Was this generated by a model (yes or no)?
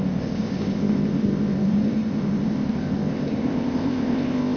yes